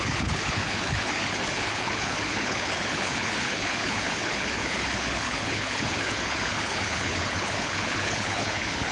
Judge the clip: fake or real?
fake